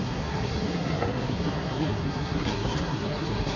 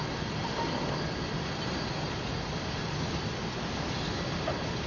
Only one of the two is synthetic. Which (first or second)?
first